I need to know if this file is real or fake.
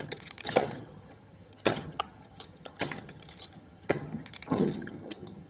fake